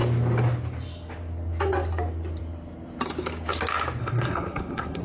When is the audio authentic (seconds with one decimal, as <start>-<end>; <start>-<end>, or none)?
0.0-4.0